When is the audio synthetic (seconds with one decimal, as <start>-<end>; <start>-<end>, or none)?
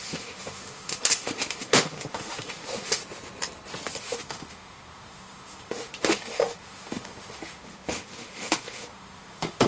0.0-3.0; 4.0-9.7